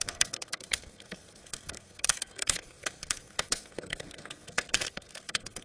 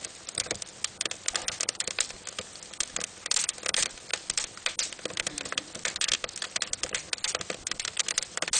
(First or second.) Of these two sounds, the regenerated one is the first